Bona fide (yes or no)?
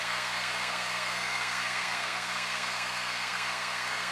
no